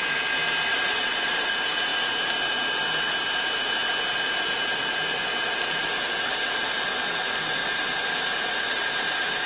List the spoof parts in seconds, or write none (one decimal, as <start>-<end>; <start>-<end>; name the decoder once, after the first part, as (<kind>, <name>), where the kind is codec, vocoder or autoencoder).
0.7-1.5 (vocoder, Vocos)